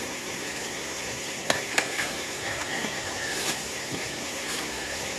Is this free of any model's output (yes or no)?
no